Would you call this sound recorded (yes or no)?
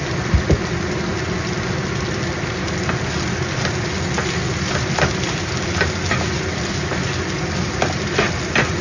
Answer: yes